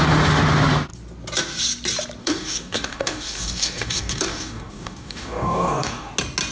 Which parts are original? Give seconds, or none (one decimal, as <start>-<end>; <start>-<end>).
0.0-2.2; 6.1-6.5